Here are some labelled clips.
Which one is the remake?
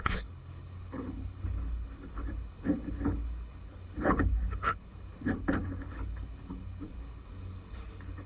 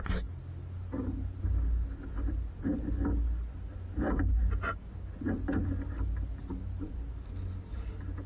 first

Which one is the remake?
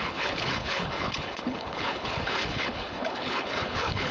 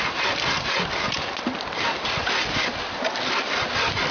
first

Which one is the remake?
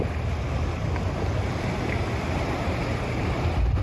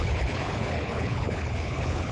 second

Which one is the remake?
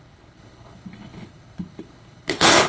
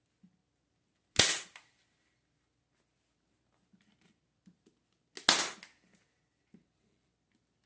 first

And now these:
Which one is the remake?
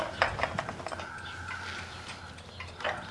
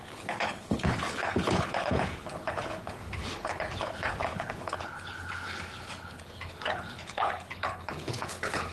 second